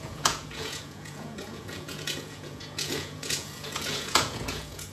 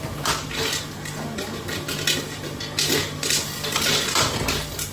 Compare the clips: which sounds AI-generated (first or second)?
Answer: first